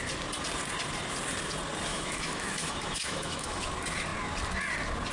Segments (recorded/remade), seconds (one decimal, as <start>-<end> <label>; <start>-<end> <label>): 0.0-1.9 recorded; 1.9-3.6 remade; 3.6-5.1 recorded